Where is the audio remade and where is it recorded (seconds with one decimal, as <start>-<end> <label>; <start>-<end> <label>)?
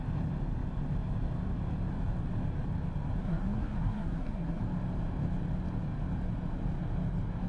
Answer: 0.0-3.2 recorded; 3.2-4.6 remade; 4.6-7.5 recorded